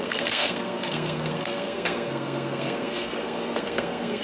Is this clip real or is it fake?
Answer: fake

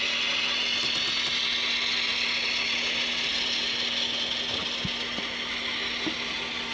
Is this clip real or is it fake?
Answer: real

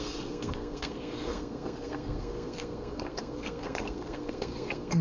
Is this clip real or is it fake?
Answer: fake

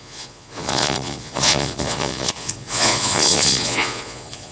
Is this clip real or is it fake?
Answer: fake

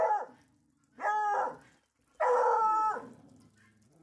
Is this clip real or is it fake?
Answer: real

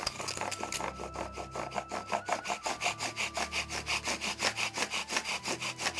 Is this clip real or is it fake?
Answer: real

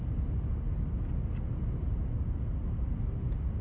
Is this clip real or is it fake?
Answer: real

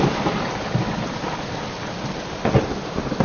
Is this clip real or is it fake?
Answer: real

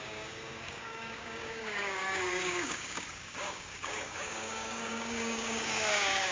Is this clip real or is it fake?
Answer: fake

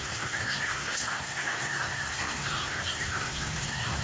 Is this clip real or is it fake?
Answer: fake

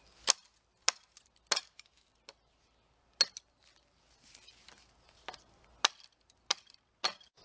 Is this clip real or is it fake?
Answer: real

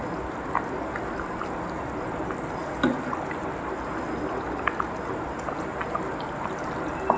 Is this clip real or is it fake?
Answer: real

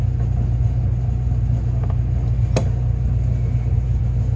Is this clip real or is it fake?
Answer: real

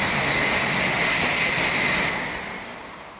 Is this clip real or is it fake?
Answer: real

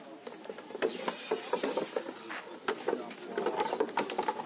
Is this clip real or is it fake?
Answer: real